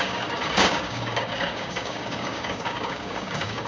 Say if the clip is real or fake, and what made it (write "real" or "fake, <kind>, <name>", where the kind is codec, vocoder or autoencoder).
fake, codec, DAC